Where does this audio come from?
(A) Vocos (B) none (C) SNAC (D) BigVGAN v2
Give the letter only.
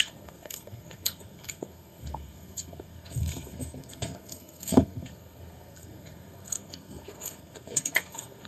C